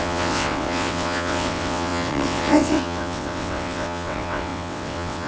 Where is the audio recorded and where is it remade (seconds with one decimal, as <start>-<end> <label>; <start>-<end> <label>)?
0.0-5.3 remade

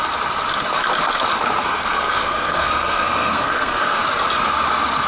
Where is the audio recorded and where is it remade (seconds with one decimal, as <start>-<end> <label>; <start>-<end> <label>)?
0.0-1.6 recorded; 1.6-4.0 remade; 4.0-5.1 recorded

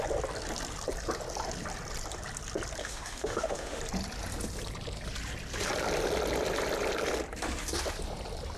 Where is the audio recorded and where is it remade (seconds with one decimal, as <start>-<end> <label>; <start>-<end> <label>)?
0.0-2.8 recorded; 2.8-3.8 remade; 3.8-8.6 recorded

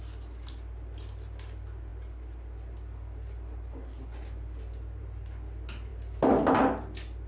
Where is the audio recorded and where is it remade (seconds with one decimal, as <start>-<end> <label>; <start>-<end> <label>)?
0.0-7.3 recorded

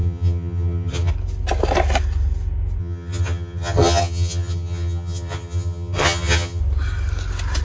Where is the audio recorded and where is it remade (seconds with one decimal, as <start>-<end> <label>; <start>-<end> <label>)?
0.0-1.1 remade; 1.1-2.8 recorded; 2.8-6.6 remade; 6.6-7.6 recorded

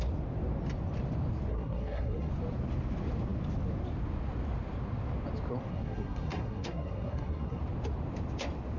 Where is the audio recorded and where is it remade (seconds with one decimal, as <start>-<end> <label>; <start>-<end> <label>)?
0.0-1.5 recorded; 1.5-2.3 remade; 2.3-5.7 recorded; 5.7-7.6 remade; 7.6-8.8 recorded

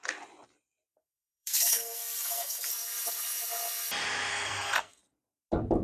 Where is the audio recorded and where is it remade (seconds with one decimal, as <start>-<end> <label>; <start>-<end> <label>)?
0.0-0.9 recorded; 0.9-2.7 remade; 2.7-4.3 recorded; 4.3-5.0 remade; 5.0-5.8 recorded

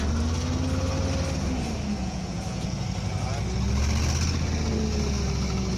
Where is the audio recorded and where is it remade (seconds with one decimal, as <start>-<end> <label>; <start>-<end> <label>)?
0.0-2.0 recorded; 2.0-2.8 remade; 2.8-5.8 recorded